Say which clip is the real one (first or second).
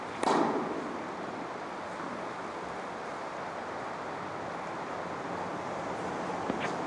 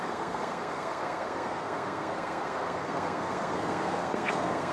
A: first